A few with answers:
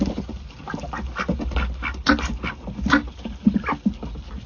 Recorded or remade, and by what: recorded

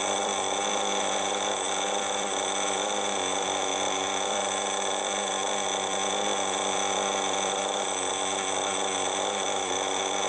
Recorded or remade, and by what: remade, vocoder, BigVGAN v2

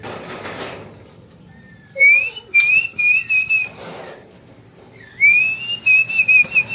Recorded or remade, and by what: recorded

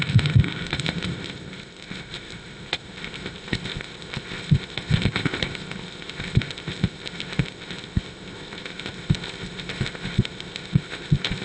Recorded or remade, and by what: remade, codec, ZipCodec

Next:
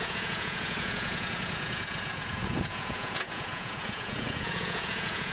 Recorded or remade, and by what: remade, vocoder, Vocos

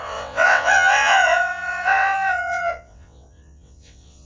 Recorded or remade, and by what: remade, vocoder, WaveNeXt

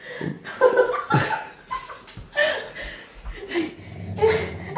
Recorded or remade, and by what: recorded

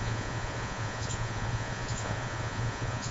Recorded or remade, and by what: remade, vocoder, Vocos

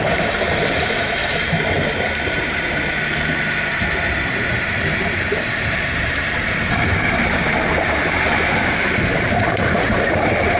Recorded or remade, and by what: remade, vocoder, BigVGAN v2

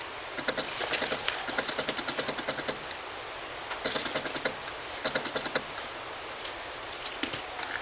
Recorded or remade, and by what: recorded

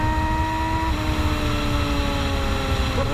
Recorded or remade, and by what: recorded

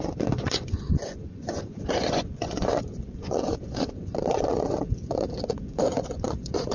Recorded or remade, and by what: remade, vocoder, Vocos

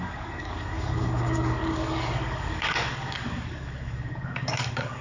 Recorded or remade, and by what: remade, codec, DAC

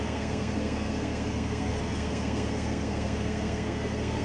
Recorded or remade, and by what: remade, codec, SNAC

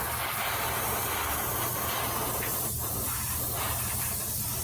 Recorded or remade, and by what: recorded